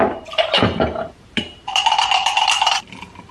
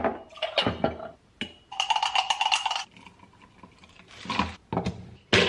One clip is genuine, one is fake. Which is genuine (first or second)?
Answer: second